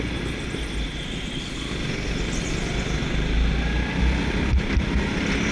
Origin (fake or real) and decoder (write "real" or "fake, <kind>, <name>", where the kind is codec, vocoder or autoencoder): real